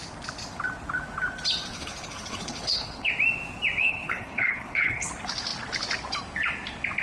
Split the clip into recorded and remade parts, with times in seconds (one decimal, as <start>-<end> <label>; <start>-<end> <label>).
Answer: 0.0-1.7 recorded; 1.7-3.1 remade; 3.1-3.8 recorded; 3.8-5.1 remade; 5.1-7.0 recorded